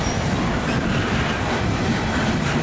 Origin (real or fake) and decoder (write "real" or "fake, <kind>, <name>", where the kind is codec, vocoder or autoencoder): real